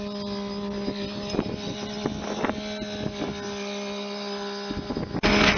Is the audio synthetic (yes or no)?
no